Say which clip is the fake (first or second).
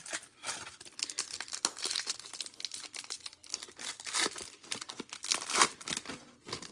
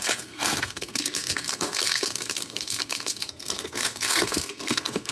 second